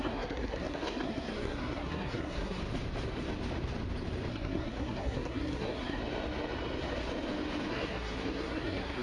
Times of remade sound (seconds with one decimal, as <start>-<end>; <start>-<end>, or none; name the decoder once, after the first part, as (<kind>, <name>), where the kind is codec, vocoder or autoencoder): 0.0-2.6 (codec, SNAC); 4.3-6.0; 7.7-9.0